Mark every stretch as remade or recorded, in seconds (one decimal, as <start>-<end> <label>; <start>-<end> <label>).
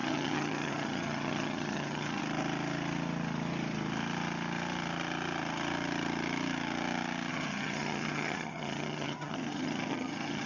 0.0-2.2 remade; 2.2-7.3 recorded; 7.3-10.5 remade